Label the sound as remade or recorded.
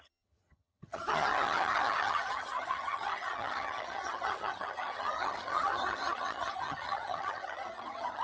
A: remade